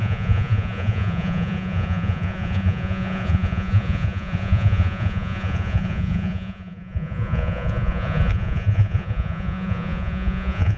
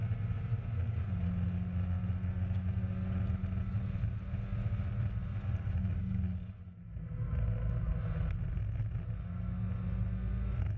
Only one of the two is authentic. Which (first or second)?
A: second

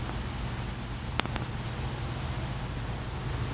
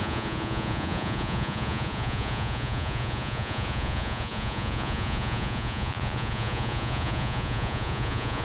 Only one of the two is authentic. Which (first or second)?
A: first